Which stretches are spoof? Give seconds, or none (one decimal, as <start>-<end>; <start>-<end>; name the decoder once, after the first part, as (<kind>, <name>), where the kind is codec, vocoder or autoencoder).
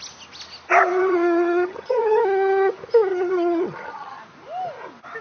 1.0-2.2 (vocoder, HiFi-GAN); 3.1-4.2